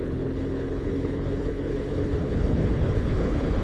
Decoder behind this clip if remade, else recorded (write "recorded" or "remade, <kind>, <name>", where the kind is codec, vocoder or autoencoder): remade, codec, HILCodec